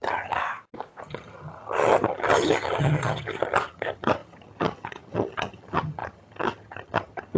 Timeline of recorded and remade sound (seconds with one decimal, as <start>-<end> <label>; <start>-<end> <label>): 0.0-0.4 remade; 0.4-1.0 recorded; 1.0-7.4 remade